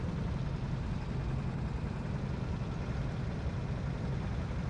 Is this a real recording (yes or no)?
yes